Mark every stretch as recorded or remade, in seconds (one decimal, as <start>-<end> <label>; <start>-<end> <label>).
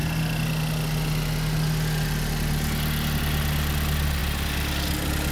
0.0-5.3 recorded